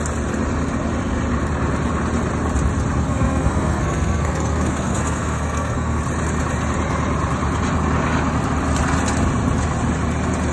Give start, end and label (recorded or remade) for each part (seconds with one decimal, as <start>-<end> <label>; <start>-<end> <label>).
0.0-3.0 recorded; 3.0-6.0 remade; 6.0-10.5 recorded